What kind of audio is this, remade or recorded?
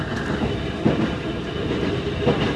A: recorded